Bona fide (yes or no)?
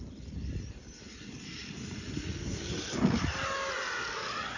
yes